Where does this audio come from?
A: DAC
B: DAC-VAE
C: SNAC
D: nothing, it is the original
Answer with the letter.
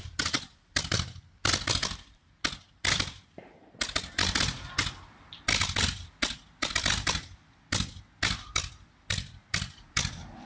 D